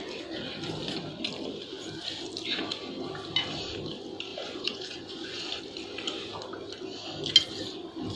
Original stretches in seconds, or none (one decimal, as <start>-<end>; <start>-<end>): 0.0-4.3; 5.6-8.2